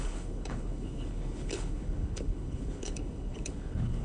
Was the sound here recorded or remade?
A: remade